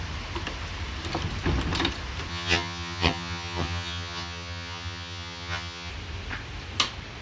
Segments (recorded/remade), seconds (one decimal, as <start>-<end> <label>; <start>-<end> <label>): 0.0-2.3 recorded; 2.3-5.9 remade; 5.9-7.2 recorded

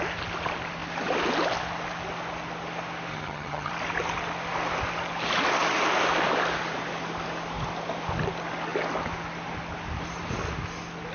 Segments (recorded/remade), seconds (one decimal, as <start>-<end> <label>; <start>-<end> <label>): 0.0-3.1 recorded; 3.1-3.7 remade; 3.7-11.1 recorded

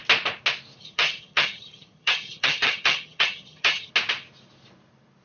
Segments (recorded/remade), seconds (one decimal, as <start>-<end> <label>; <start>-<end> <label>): 0.0-0.8 recorded; 0.8-3.9 remade; 3.9-5.2 recorded

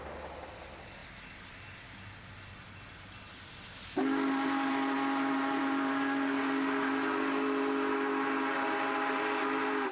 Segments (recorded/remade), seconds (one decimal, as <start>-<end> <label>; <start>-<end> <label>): 0.0-9.9 recorded

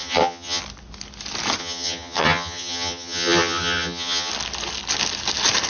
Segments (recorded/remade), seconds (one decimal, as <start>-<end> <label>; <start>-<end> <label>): 0.0-0.6 remade; 0.6-1.6 recorded; 1.6-4.3 remade; 4.3-5.7 recorded